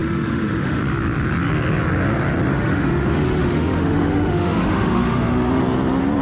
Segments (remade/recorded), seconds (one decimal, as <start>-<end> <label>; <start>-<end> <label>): 0.0-0.8 remade; 0.8-2.5 recorded; 2.5-5.6 remade; 5.6-6.2 recorded